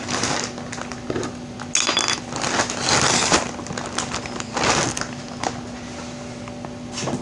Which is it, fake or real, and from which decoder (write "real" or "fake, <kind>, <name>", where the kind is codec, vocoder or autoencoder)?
real